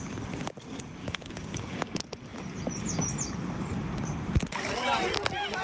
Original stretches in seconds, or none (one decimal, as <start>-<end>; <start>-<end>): 0.0-1.0; 1.9-5.6